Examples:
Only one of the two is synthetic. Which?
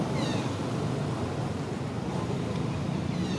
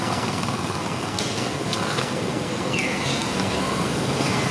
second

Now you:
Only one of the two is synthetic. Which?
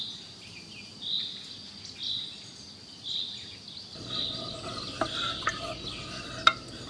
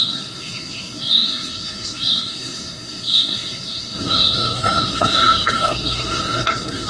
second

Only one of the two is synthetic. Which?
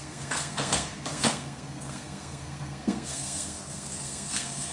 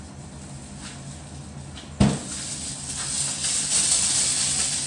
first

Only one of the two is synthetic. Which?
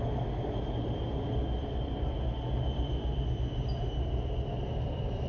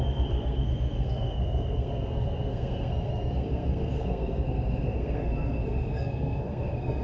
second